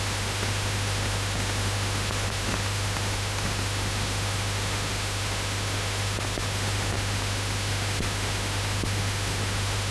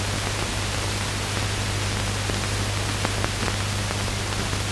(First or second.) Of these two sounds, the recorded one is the second